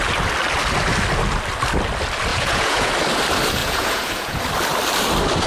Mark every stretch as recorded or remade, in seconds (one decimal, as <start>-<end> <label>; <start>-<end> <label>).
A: 0.0-2.3 recorded; 2.3-2.9 remade; 2.9-3.6 recorded; 3.6-4.4 remade; 4.4-5.5 recorded